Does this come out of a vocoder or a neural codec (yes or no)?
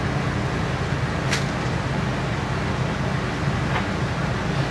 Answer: no